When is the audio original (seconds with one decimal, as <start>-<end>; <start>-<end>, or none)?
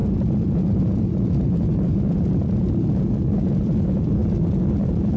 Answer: 0.0-5.2